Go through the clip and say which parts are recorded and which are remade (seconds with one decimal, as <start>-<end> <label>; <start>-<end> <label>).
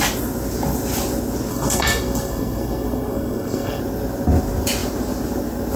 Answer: 0.0-1.5 recorded; 1.5-3.8 remade; 3.8-5.8 recorded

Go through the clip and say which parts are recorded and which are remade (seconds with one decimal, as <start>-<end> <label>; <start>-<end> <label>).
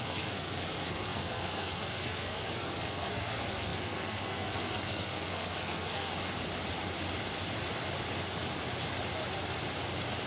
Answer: 0.0-6.1 remade; 6.1-10.3 recorded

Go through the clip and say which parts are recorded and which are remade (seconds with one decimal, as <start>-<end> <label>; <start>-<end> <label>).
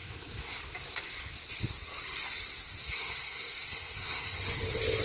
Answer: 0.0-0.6 remade; 0.6-2.8 recorded; 2.8-4.4 remade; 4.4-5.0 recorded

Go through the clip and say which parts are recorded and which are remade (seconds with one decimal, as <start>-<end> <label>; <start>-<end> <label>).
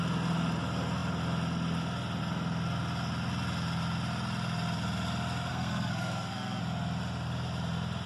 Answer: 0.0-5.5 recorded; 5.5-6.6 remade; 6.6-8.1 recorded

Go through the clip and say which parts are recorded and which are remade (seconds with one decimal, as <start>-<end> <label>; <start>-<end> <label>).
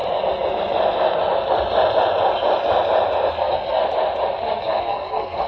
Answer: 0.0-3.3 recorded; 3.3-3.8 remade; 3.8-4.8 recorded; 4.8-5.5 remade